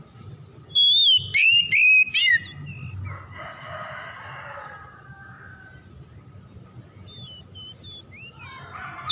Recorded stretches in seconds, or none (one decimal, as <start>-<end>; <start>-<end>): 0.0-9.1